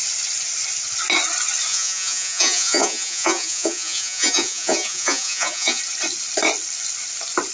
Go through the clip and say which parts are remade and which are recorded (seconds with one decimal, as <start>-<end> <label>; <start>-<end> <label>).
0.0-1.7 recorded; 1.7-5.8 remade; 5.8-7.5 recorded